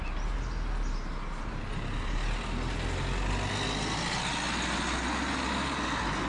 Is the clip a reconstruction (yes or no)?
no